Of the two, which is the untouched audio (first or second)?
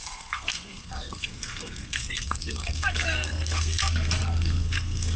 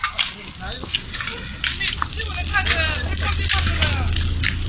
second